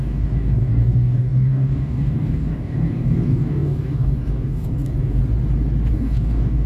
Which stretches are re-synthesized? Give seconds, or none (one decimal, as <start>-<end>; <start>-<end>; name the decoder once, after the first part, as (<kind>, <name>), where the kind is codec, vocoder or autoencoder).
0.0-5.2 (codec, DAC); 5.9-6.7